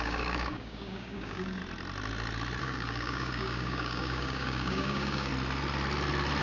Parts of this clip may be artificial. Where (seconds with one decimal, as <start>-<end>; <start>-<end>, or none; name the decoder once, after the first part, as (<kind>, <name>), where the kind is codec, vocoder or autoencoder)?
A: 0.0-1.6 (codec, DAC); 2.6-5.3